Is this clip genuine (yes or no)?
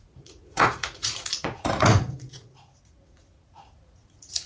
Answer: no